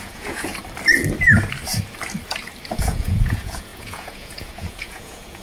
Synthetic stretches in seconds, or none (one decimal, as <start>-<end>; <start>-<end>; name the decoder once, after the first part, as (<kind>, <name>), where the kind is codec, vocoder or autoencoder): 0.0-0.5 (vocoder, Vocos); 2.7-5.4